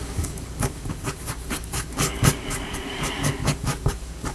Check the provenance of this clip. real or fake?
fake